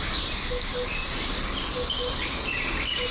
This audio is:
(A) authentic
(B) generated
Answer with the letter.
A